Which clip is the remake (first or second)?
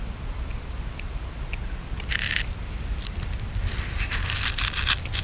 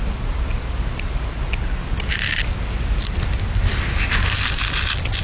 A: first